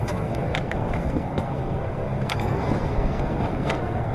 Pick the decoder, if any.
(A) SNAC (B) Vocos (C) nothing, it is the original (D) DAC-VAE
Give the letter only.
A